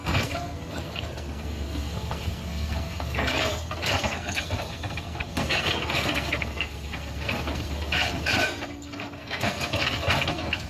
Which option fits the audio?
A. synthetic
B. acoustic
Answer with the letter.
A